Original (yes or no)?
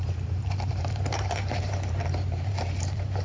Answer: no